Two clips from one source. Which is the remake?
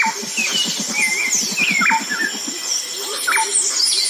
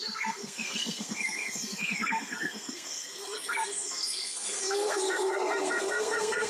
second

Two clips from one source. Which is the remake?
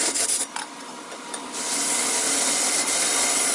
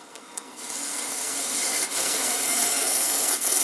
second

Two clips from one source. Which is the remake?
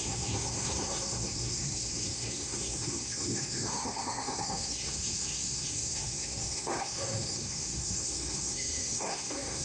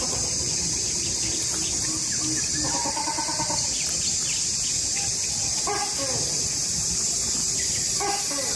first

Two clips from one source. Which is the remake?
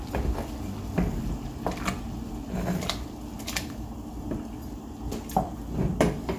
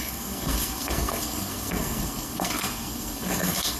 second